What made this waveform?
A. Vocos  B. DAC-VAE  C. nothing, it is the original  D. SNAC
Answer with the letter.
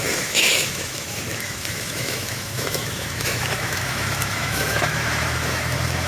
B